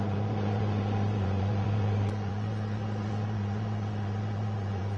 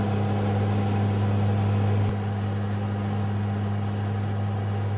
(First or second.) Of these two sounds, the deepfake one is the first